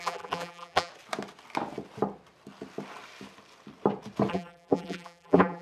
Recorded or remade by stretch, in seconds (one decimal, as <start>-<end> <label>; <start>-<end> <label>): 0.0-0.9 remade; 0.9-4.3 recorded; 4.3-5.6 remade